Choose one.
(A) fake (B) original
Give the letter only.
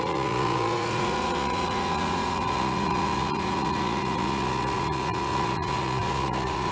A